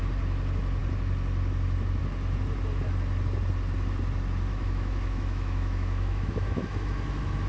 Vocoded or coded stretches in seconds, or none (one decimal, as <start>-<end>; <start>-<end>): 4.5-7.5